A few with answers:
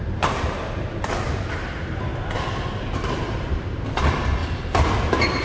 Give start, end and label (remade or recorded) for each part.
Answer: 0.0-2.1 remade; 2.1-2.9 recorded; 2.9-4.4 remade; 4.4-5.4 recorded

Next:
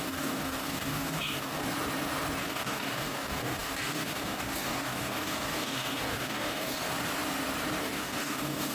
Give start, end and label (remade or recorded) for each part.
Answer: 0.0-1.6 remade; 1.6-2.4 recorded; 2.4-6.8 remade; 6.8-7.8 recorded; 7.8-8.7 remade

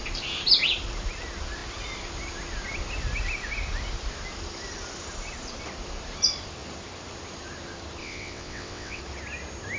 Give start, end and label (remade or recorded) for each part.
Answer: 0.0-8.0 recorded; 8.0-9.0 remade; 9.0-9.8 recorded

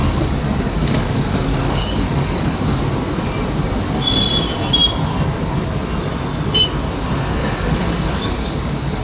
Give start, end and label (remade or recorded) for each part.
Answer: 0.0-2.8 remade; 2.8-7.4 recorded; 7.4-9.0 remade